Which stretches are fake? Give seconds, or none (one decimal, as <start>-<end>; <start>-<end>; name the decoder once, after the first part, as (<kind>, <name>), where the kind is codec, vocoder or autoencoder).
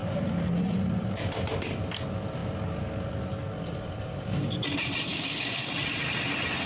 5.1-5.7 (codec, DAC)